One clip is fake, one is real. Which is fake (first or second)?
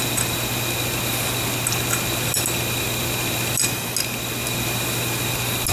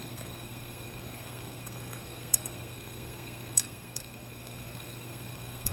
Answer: second